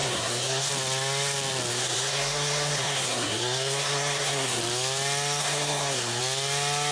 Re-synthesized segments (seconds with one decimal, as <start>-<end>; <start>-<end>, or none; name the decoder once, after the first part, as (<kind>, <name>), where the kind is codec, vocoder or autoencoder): 0.0-0.7 (codec, SNAC); 1.7-4.6; 5.4-6.2